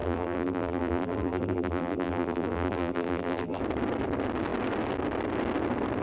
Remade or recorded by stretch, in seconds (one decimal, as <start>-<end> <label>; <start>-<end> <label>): 0.0-3.6 remade; 3.6-6.0 recorded